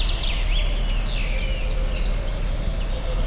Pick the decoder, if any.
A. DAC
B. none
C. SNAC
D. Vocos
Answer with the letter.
B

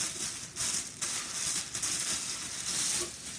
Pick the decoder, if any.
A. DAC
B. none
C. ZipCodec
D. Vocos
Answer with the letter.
B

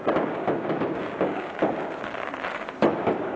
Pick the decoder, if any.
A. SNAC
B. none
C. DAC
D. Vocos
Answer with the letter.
C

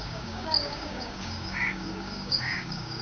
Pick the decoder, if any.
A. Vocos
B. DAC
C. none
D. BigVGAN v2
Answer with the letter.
B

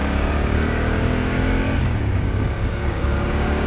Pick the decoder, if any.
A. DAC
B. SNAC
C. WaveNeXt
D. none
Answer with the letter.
A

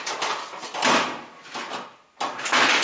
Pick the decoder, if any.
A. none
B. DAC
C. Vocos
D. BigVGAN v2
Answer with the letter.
A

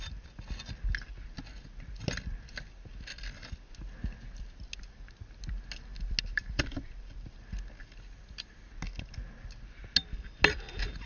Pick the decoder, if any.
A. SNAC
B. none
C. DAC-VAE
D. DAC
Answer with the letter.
B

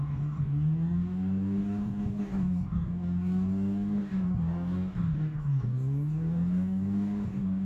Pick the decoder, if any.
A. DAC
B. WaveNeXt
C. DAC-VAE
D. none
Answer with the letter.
A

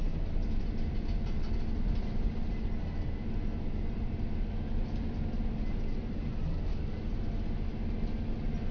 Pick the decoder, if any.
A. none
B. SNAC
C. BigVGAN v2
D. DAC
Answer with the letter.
A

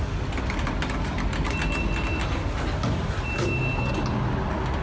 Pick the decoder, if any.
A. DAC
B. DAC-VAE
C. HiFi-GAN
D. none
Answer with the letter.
D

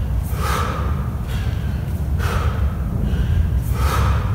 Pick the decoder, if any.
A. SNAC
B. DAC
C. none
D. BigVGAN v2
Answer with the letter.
C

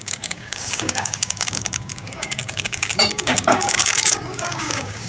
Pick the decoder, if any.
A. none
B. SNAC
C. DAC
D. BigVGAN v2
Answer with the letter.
C